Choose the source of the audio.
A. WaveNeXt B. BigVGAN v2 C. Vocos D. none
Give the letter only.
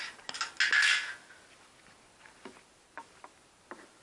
D